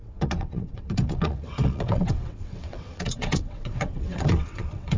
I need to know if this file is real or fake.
fake